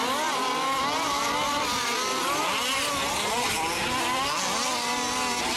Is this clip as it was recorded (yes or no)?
yes